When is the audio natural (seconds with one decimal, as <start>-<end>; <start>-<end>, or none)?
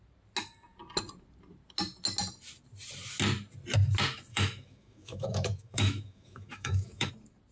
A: 0.0-4.3; 7.1-7.5